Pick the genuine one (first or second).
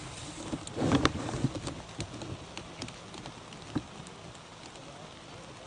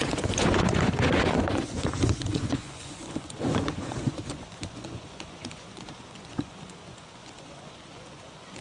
first